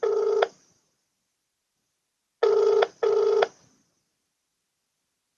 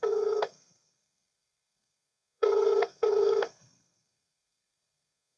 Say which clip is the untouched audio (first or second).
first